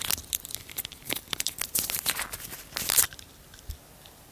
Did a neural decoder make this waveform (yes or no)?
yes